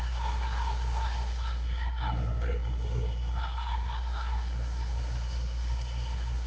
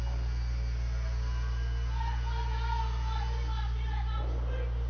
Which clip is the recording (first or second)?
second